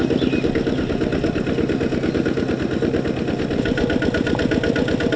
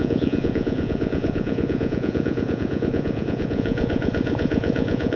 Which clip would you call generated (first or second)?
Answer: second